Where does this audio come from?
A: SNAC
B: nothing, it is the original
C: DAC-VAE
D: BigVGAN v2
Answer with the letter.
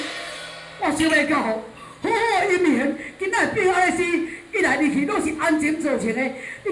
B